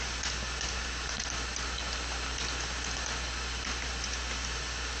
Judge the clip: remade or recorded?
recorded